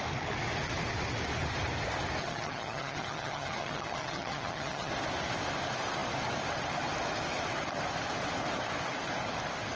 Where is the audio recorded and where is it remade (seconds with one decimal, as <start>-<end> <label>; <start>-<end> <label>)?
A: 0.0-2.2 recorded; 2.2-4.9 remade; 4.9-9.8 recorded